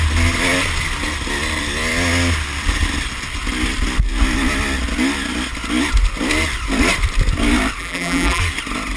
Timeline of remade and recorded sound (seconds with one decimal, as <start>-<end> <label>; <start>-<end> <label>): 0.0-7.8 recorded; 7.8-8.4 remade; 8.4-9.0 recorded